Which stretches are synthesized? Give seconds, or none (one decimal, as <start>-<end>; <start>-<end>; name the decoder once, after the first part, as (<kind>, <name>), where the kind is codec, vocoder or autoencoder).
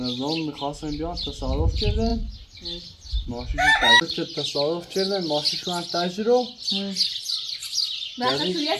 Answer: none